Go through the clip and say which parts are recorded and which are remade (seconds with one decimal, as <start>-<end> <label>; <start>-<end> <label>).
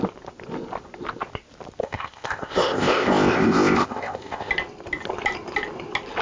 0.0-1.8 recorded; 1.8-4.5 remade; 4.5-6.2 recorded